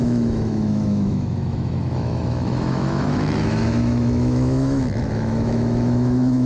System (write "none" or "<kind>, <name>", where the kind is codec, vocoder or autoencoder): autoencoder, DAC-VAE